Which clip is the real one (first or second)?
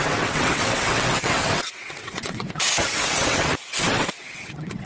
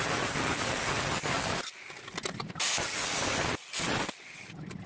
second